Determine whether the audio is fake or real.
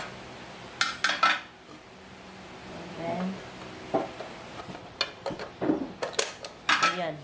real